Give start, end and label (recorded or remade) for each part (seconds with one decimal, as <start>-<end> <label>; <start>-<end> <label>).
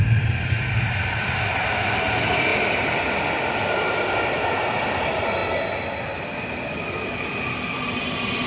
0.0-8.5 recorded